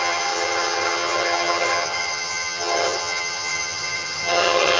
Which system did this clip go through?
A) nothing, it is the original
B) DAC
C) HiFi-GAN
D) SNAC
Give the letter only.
C